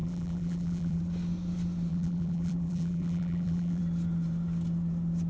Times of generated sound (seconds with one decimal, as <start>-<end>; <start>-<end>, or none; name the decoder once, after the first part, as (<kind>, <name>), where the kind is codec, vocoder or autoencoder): 0.0-1.0 (vocoder, BigVGAN v2); 1.9-3.8